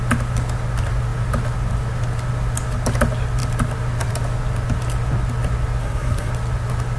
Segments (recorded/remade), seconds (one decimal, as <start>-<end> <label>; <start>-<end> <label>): 0.0-5.8 recorded; 5.8-6.3 remade; 6.3-7.0 recorded